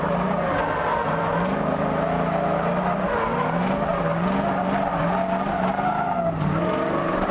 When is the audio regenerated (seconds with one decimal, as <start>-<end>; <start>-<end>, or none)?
none